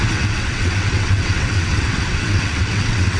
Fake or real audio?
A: fake